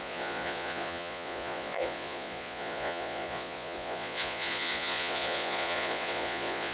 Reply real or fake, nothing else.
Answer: fake